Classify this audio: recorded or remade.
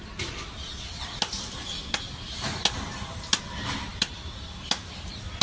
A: recorded